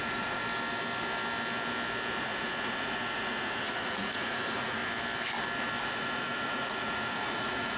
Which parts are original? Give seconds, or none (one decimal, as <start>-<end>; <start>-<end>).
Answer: 0.4-2.2; 4.8-5.8